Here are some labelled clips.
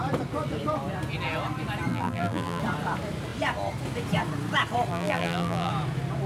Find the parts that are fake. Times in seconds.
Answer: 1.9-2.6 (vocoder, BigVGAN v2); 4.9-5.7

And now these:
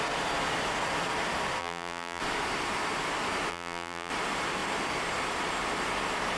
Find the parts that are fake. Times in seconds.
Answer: 1.6-2.2 (vocoder, BigVGAN v2); 3.5-4.1

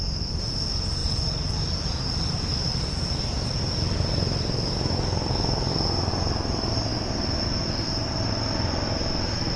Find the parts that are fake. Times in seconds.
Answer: none

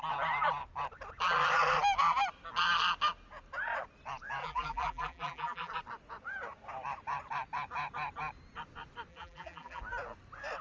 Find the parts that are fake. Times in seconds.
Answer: 4.4-5.7 (vocoder, BigVGAN v2); 9.1-9.8

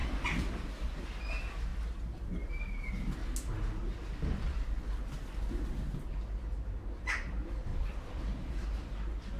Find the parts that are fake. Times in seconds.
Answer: 0.0-1.0 (vocoder, BigVGAN v2); 7.7-8.5

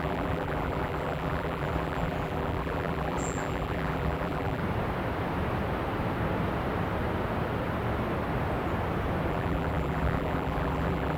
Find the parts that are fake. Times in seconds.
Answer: 0.0-4.6 (vocoder, BigVGAN v2); 9.3-11.2